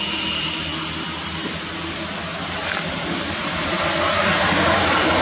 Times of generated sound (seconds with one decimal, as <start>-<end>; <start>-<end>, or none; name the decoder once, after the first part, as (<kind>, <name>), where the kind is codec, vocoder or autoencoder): 0.0-0.7 (vocoder, BigVGAN v2); 3.8-5.2